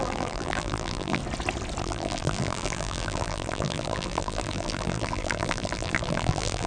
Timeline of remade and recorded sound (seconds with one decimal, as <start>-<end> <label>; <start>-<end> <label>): 0.0-1.2 remade; 1.2-1.8 recorded; 1.8-6.7 remade